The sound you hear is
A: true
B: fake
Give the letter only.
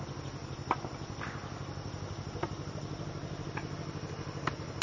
A